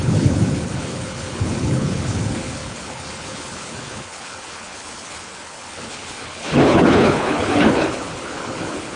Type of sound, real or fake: fake